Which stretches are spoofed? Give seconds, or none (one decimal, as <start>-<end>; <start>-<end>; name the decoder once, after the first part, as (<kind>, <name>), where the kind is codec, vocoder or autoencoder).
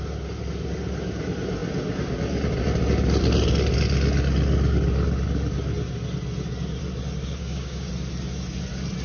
7.4-7.9 (codec, DAC)